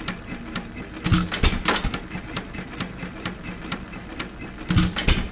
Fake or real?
real